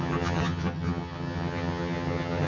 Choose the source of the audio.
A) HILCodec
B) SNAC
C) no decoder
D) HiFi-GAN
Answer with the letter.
D